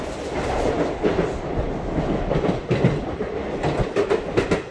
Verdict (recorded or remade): recorded